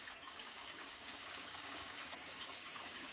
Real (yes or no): no